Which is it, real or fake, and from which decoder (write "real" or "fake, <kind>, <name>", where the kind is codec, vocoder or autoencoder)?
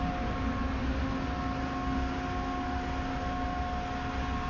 real